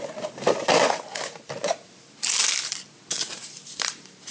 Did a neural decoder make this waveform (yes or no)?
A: no